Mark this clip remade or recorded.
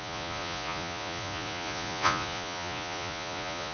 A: remade